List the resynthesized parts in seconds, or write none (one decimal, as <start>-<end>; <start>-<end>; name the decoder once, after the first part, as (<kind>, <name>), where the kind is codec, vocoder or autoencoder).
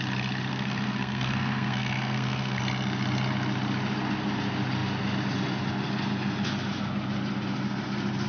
0.5-2.6 (codec, SNAC)